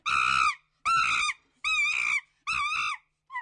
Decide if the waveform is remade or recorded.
recorded